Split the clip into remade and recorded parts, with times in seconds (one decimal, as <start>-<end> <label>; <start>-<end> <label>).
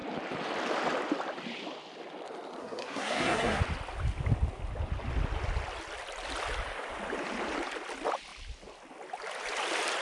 0.0-2.6 recorded; 2.6-3.6 remade; 3.6-10.0 recorded